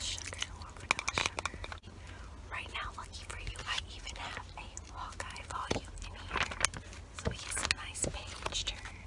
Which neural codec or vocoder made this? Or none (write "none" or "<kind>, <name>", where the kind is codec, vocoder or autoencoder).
none